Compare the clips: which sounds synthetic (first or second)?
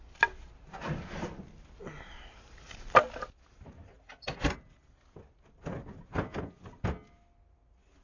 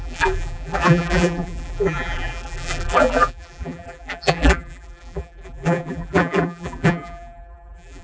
second